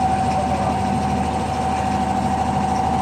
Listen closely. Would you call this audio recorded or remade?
recorded